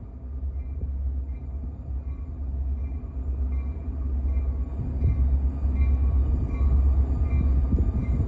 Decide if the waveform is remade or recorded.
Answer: recorded